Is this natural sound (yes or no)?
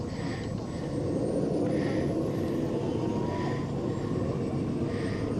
yes